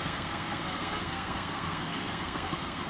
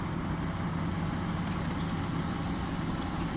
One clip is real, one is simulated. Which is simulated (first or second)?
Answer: first